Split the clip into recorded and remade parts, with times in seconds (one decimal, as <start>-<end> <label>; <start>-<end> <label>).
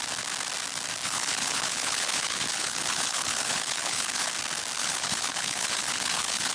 0.0-1.0 recorded; 1.0-4.3 remade; 4.3-4.8 recorded; 4.8-6.5 remade